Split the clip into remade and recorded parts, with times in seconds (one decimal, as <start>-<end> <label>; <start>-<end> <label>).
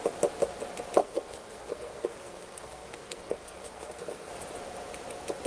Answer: 0.0-1.0 recorded; 1.0-4.3 remade; 4.3-5.5 recorded